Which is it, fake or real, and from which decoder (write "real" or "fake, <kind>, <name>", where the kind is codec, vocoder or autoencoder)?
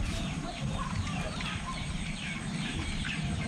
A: fake, vocoder, BigVGAN v2